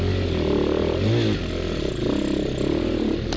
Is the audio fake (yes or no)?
no